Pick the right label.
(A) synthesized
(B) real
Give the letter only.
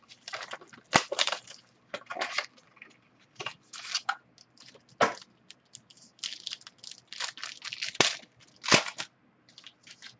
B